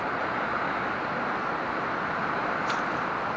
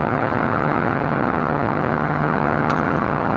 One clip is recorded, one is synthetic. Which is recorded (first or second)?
first